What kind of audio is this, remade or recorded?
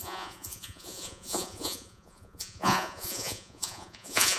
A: remade